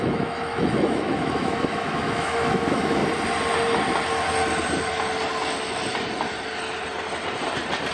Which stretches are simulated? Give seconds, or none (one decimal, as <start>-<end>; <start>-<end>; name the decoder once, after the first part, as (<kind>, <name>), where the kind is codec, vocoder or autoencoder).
0.0-3.0 (autoencoder, DAC-VAE)